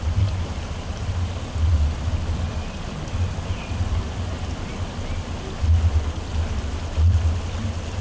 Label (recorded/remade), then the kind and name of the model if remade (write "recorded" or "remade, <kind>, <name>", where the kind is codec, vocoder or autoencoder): recorded